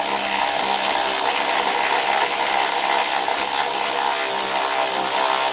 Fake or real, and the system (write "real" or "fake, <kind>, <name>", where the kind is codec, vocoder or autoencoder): real